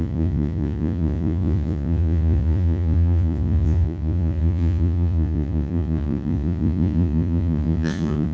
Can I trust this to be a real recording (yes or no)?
no